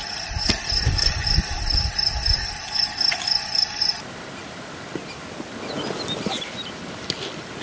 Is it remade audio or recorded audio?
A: recorded